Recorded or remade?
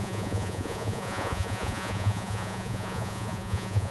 remade